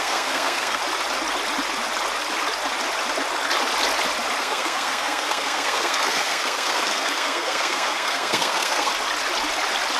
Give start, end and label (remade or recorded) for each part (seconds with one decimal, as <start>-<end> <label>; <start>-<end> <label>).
0.0-0.8 remade; 0.8-4.4 recorded; 4.4-8.9 remade; 8.9-10.0 recorded